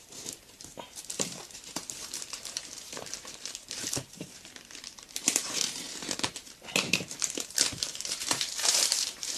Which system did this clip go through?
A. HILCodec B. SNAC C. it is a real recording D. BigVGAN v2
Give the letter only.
D